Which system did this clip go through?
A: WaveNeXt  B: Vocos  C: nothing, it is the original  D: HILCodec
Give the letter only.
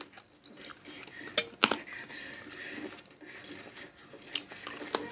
C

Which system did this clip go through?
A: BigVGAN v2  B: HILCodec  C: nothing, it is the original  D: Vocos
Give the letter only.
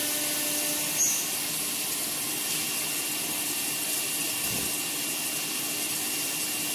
C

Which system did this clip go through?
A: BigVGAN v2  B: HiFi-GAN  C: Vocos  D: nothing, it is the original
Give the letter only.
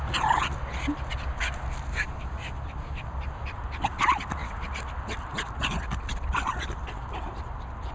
D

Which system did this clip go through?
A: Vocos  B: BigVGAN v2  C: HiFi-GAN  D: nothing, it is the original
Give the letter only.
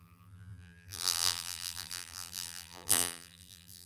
B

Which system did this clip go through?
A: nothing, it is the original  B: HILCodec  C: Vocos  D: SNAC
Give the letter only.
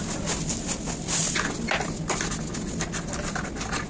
A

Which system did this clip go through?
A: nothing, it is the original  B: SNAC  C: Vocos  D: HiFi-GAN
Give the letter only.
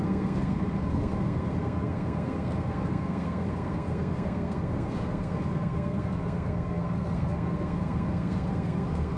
B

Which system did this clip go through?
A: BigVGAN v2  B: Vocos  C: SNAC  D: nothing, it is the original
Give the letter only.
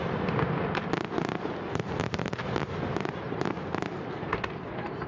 D